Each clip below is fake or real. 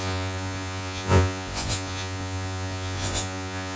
fake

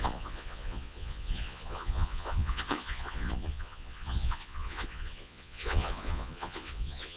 fake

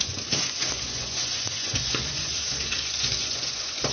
fake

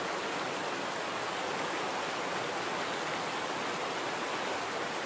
real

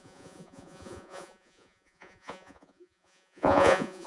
fake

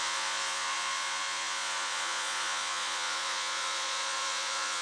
fake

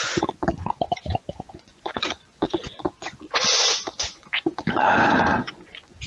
fake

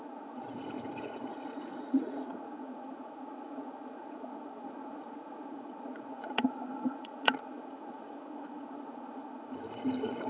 fake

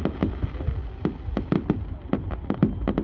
real